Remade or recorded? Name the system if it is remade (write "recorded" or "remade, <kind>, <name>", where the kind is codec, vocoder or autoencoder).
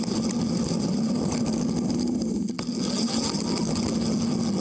recorded